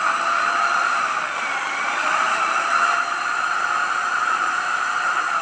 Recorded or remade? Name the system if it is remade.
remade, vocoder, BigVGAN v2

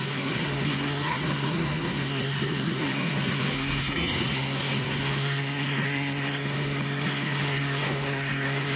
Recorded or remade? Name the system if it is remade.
remade, codec, SNAC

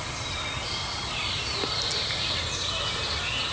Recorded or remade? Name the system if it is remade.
recorded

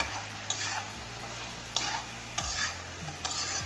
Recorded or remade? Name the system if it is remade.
recorded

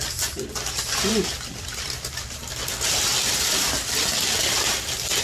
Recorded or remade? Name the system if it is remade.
remade, vocoder, BigVGAN v2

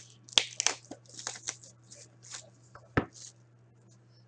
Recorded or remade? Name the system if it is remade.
recorded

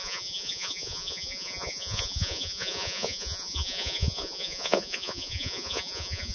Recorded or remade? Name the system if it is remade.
remade, vocoder, Vocos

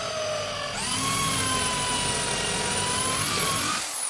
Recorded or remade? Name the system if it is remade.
recorded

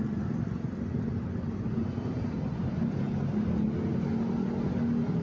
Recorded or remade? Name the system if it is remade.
recorded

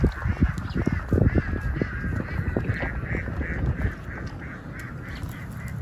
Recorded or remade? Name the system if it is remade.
recorded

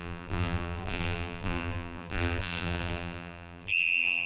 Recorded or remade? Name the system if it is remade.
remade, vocoder, BigVGAN v2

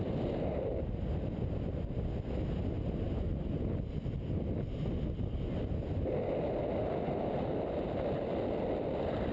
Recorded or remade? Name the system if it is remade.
recorded